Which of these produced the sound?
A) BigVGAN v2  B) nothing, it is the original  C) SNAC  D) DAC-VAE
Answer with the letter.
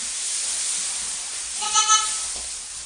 B